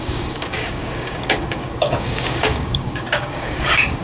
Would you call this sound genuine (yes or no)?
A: no